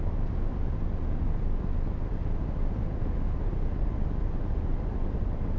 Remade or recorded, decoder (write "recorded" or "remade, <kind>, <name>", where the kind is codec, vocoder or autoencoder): recorded